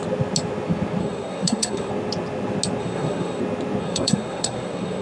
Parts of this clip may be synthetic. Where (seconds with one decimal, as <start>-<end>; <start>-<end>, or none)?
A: 1.0-1.9; 2.8-3.4; 3.8-5.0

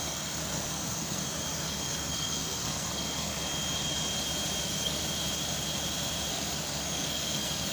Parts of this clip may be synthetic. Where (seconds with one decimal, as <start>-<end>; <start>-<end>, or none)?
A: 0.0-1.2; 1.7-3.3; 4.6-5.0; 6.3-7.7